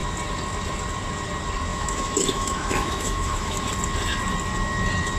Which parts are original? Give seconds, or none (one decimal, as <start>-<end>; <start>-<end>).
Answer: 0.0-1.7; 3.6-5.2